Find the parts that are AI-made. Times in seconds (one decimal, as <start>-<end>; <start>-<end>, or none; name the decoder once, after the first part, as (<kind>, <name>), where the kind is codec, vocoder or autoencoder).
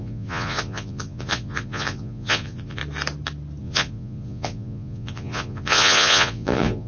0.0-2.8 (vocoder, Vocos); 3.6-6.9